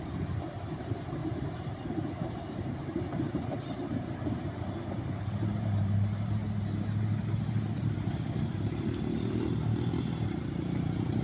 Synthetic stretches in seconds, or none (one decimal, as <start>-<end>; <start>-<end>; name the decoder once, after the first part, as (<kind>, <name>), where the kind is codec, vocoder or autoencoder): 0.0-1.2 (vocoder, BigVGAN v2); 2.3-11.2